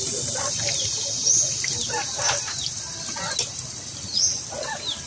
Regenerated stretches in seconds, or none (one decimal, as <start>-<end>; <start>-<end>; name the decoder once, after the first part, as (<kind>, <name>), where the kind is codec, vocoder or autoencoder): none